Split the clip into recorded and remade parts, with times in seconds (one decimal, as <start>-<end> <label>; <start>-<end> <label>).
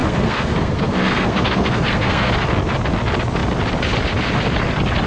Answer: 0.0-2.3 remade; 2.3-5.1 recorded